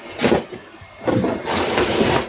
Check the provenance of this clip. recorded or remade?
recorded